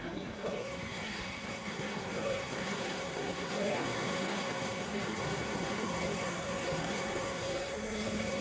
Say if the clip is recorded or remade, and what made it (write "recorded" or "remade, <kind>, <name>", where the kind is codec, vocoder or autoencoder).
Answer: remade, codec, SNAC